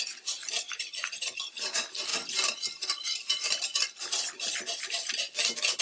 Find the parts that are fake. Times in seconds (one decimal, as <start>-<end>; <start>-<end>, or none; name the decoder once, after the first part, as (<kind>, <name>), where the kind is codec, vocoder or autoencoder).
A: none